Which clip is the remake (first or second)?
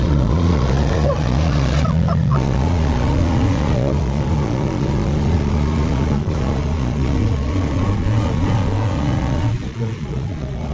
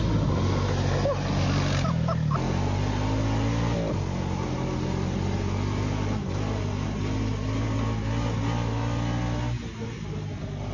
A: first